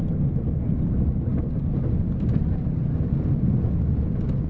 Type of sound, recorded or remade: recorded